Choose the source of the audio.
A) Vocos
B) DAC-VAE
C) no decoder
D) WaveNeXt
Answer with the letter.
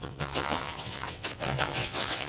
D